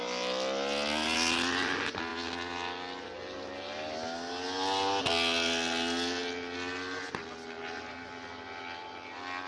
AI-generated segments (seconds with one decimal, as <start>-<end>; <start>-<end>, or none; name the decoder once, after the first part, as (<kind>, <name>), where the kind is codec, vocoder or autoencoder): none